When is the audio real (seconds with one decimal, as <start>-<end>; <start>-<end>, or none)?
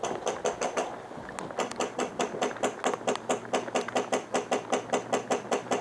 0.0-5.8